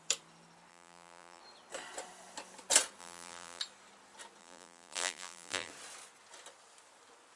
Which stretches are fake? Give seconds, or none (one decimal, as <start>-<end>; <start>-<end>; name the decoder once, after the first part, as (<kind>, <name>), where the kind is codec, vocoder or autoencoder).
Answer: 0.7-1.4 (vocoder, BigVGAN v2); 3.0-3.6; 4.4-5.7